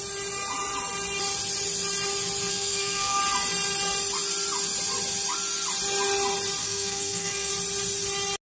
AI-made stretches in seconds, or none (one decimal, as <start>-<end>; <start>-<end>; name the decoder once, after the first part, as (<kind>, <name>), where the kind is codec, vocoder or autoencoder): 2.5-3.2 (codec, SNAC); 6.6-7.5